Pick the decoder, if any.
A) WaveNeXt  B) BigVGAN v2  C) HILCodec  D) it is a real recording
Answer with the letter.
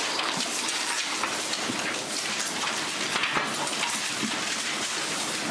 D